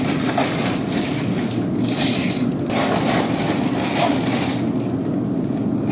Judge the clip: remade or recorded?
recorded